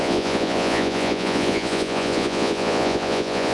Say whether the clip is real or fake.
fake